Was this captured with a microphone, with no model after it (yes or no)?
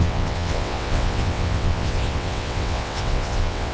no